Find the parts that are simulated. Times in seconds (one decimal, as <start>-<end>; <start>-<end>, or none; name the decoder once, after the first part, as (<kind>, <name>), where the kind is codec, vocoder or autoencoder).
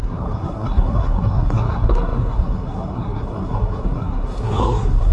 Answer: 0.0-5.1 (codec, SNAC)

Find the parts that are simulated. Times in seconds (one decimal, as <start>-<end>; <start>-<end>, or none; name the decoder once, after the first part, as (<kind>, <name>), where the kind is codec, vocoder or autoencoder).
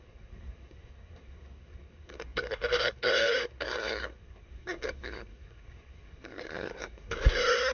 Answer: 0.0-7.7 (codec, SNAC)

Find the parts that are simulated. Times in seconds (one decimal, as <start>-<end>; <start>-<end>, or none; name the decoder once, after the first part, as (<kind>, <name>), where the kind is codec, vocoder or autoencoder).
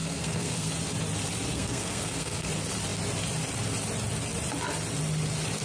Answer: 0.0-0.7 (codec, SNAC); 1.5-2.5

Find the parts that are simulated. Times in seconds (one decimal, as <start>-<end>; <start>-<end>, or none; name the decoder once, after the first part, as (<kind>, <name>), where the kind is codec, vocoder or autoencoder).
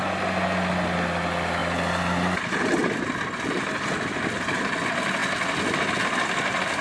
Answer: none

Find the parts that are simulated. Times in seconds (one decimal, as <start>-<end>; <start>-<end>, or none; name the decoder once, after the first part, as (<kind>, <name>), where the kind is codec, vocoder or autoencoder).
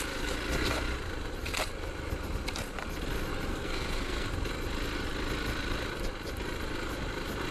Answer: 3.5-4.3 (codec, SNAC)